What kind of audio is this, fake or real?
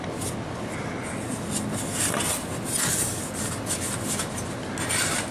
real